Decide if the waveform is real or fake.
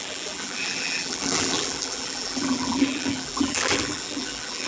fake